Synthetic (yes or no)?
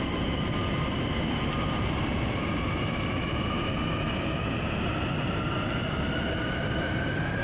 yes